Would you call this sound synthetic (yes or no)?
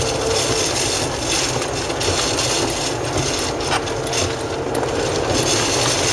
no